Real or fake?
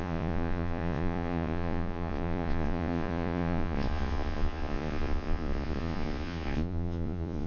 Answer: fake